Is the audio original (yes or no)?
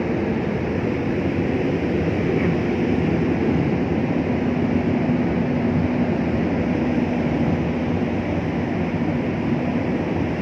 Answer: yes